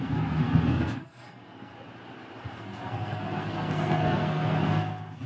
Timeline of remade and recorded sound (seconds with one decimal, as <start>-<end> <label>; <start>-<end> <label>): 0.0-1.7 remade; 1.7-2.4 recorded; 2.4-5.3 remade